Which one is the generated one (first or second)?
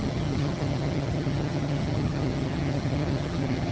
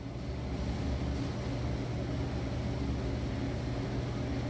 first